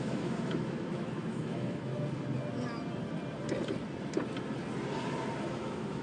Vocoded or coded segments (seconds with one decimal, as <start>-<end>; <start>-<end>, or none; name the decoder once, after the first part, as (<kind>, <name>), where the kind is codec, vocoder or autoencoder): 0.0-1.9 (autoencoder, DAC-VAE); 5.5-6.0